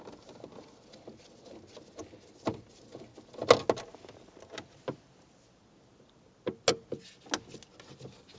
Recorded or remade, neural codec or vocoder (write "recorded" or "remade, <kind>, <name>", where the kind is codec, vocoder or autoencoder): recorded